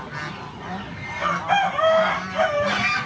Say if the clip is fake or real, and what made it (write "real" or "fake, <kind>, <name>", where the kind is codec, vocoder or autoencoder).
real